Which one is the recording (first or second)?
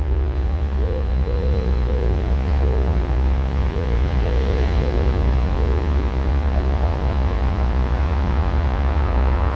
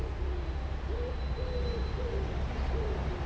second